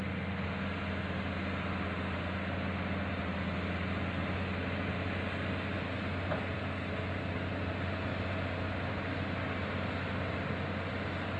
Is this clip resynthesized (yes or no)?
no